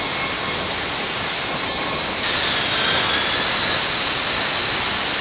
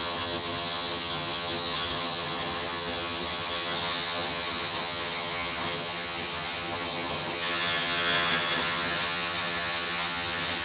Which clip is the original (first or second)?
first